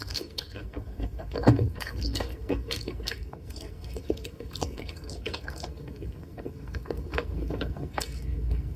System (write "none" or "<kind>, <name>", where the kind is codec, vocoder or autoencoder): codec, SNAC